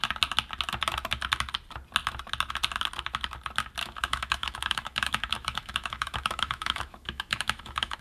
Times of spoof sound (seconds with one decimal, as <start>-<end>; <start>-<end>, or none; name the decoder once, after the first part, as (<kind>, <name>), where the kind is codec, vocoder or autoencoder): 3.8-8.0 (autoencoder, DAC-VAE)